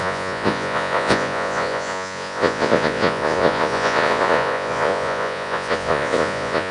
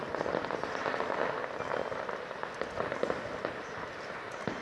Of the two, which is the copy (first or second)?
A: first